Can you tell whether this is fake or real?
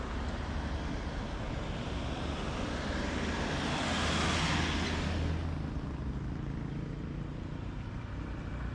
real